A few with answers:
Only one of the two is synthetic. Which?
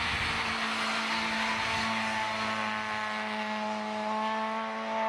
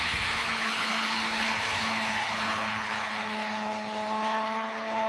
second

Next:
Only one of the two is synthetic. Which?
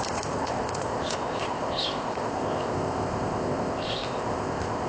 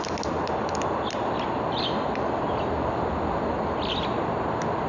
first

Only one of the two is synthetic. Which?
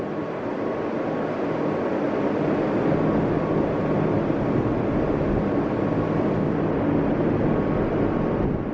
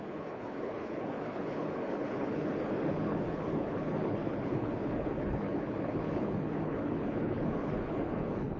second